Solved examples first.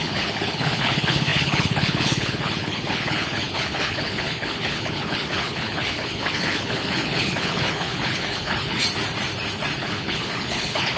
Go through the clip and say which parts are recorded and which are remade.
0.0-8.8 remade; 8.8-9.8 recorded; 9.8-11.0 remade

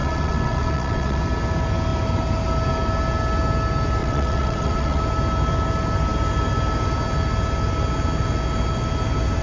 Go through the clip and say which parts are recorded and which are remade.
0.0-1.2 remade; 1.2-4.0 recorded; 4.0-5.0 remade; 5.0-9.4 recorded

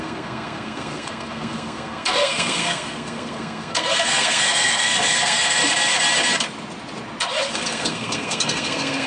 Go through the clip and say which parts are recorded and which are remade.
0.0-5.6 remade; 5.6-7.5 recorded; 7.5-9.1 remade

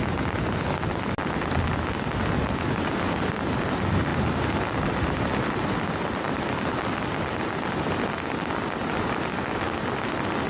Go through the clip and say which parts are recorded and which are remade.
0.0-10.5 recorded

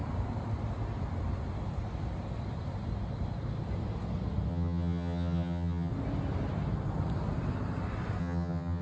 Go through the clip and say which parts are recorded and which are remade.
0.0-4.5 recorded; 4.5-5.9 remade; 5.9-8.2 recorded; 8.2-8.8 remade

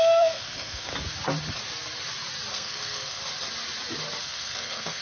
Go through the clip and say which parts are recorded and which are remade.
0.0-0.9 remade; 0.9-2.5 recorded; 2.5-3.2 remade; 3.2-4.2 recorded; 4.2-5.0 remade